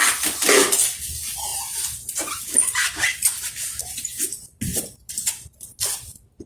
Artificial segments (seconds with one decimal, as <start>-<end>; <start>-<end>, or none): 1.5-2.4; 4.7-5.8